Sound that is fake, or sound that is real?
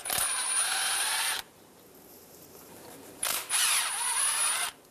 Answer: fake